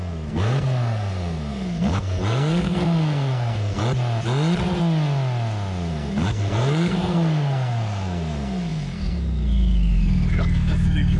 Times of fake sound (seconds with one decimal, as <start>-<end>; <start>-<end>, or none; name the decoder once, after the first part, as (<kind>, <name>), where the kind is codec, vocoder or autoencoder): 0.0-3.8 (codec, SNAC); 5.9-11.2